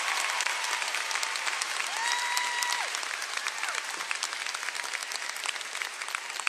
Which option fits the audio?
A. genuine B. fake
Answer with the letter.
A